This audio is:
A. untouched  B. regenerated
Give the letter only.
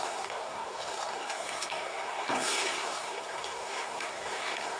B